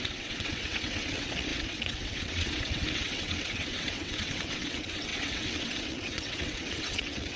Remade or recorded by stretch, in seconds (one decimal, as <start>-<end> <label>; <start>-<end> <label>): 0.0-7.4 remade